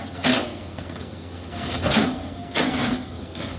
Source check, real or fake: fake